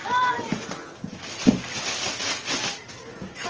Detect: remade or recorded recorded